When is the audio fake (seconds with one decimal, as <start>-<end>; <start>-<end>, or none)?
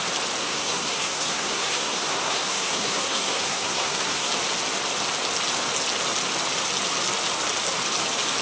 0.4-4.3